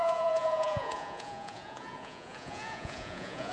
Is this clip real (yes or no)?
no